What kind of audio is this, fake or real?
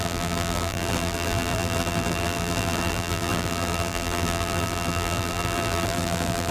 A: fake